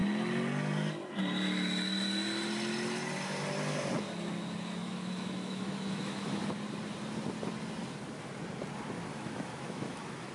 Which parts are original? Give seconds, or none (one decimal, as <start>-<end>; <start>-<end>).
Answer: 0.0-4.8; 6.4-9.1